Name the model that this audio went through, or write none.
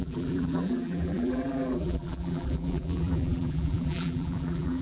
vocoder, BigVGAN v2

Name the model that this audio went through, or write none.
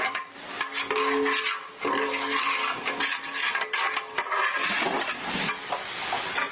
none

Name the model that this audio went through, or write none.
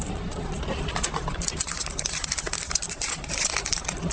none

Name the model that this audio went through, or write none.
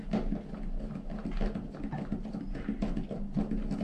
none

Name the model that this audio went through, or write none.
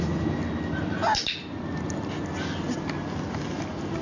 none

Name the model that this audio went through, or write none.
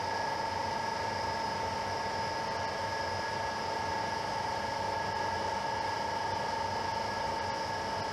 none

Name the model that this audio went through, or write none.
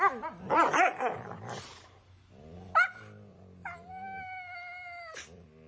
none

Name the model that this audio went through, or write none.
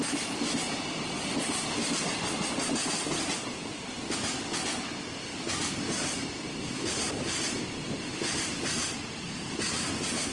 none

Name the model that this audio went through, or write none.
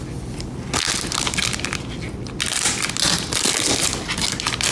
none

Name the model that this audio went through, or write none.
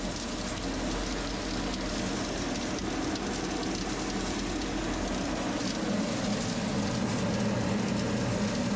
none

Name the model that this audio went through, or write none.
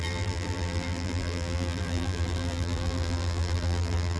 vocoder, BigVGAN v2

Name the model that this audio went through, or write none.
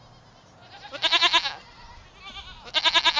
none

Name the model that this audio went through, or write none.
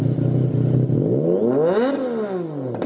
none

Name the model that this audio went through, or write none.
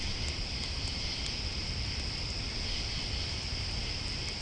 vocoder, BigVGAN v2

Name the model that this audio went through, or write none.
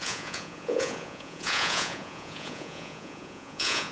vocoder, Vocos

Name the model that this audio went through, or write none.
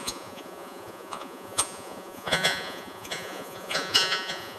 vocoder, Vocos